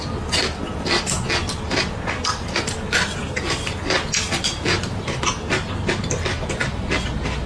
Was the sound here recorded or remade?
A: recorded